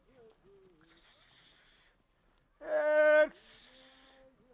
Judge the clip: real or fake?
real